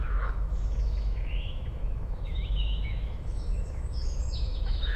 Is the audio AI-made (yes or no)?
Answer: yes